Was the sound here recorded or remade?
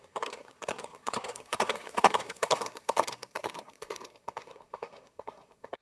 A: remade